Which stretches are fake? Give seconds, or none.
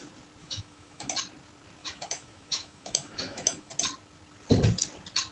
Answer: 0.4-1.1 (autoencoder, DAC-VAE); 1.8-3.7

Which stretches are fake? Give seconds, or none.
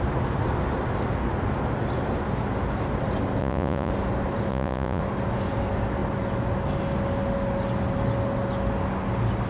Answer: 3.4-3.9 (vocoder, Vocos); 4.5-5.0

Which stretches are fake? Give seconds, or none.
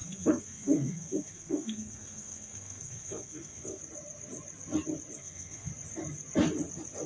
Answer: 0.0-3.8 (codec, SNAC); 5.2-5.7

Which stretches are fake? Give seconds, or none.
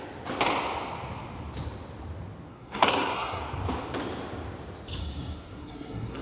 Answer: 2.5-3.4 (codec, SNAC); 5.0-6.2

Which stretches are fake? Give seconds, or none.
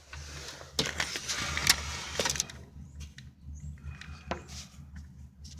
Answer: none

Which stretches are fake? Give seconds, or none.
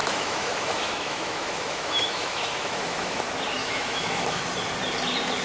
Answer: 0.0-3.2 (autoencoder, DAC-VAE); 3.6-4.4